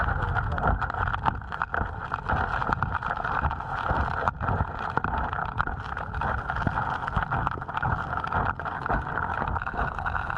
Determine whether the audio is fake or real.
real